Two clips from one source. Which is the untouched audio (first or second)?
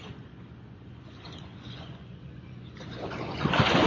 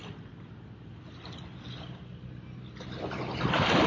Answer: second